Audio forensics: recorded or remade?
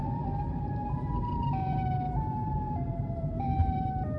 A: remade